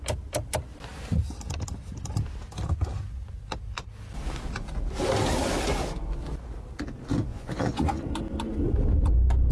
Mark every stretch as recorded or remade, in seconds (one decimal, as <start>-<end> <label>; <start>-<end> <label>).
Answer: 0.0-7.3 recorded; 7.3-8.0 remade; 8.0-9.5 recorded